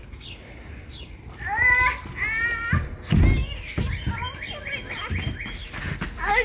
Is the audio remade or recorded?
recorded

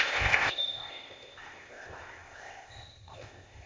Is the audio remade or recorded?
remade